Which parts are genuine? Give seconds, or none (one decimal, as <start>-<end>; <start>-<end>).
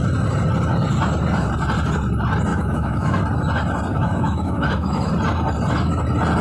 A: 0.0-2.5; 3.2-3.9; 5.1-6.4